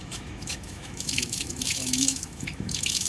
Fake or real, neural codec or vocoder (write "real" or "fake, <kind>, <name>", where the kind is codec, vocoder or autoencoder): fake, autoencoder, DAC-VAE